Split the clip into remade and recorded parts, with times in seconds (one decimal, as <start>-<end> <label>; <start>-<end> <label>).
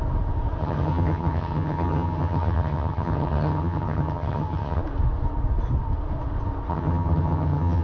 0.0-0.6 recorded; 0.6-4.8 remade; 4.8-6.7 recorded; 6.7-7.8 remade